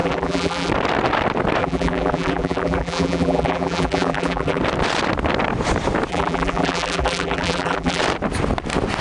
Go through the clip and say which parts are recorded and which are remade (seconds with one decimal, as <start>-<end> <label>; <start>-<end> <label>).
0.0-0.7 remade; 0.7-1.6 recorded; 1.6-4.6 remade; 4.6-6.1 recorded; 6.1-8.0 remade; 8.0-9.0 recorded